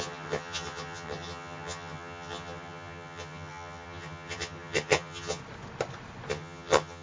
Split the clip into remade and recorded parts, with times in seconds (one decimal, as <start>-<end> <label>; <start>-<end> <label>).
0.0-5.4 remade; 5.4-6.3 recorded; 6.3-7.0 remade